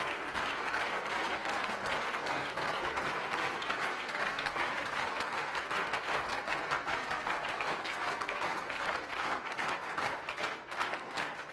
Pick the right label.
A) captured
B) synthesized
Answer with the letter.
B